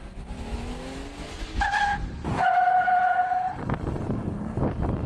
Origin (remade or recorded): recorded